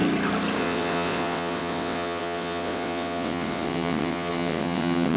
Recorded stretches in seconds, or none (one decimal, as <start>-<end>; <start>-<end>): 0.0-0.6